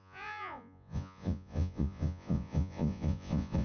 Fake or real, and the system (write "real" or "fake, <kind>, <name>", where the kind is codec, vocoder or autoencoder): fake, vocoder, Vocos